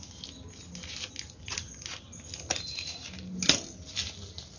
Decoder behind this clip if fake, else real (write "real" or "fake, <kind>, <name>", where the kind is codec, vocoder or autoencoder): real